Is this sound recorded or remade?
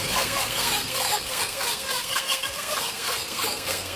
remade